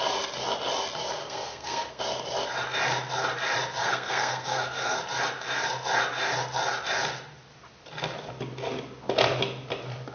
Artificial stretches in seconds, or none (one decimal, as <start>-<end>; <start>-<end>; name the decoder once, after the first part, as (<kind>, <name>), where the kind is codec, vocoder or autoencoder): 1.2-2.0 (codec, SNAC); 3.8-5.0